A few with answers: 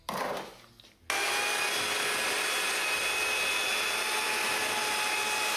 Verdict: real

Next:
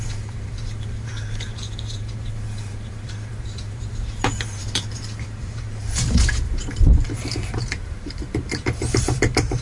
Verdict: fake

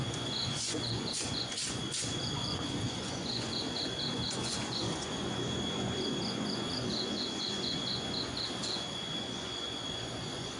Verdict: fake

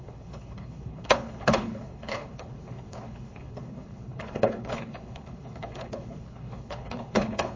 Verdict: fake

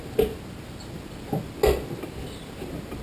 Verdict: real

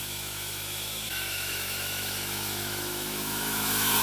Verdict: fake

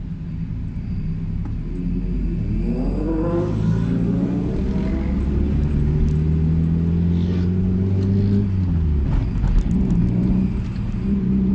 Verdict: real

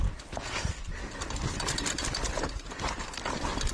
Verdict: real